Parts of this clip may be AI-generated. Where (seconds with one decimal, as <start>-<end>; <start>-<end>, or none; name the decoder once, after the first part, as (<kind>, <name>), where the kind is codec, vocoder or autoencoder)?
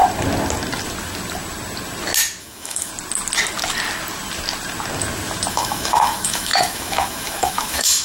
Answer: 2.4-2.9 (autoencoder, DAC-VAE); 5.5-8.0